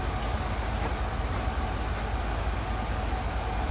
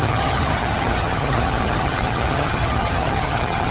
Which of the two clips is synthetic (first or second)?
second